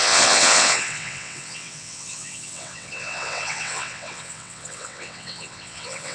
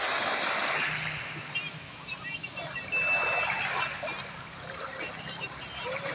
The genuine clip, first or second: second